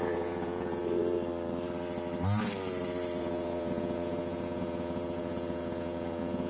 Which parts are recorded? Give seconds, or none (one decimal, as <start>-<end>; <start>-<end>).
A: 0.8-3.2